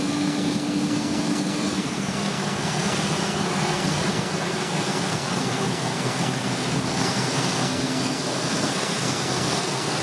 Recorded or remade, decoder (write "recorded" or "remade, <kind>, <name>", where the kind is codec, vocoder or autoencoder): remade, codec, SNAC